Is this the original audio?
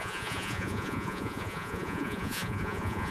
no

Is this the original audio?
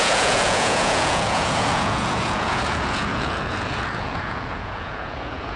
no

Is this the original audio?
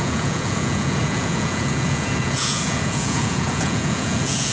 no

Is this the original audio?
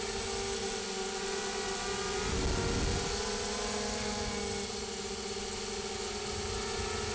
yes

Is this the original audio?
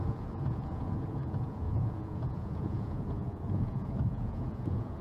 no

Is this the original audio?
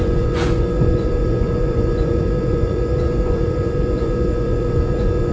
no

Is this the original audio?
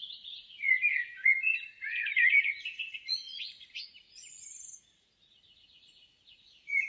no